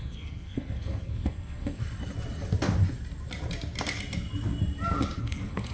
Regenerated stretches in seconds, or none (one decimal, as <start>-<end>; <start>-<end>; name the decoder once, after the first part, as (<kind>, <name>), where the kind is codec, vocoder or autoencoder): 0.0-1.8 (codec, SNAC); 5.2-5.7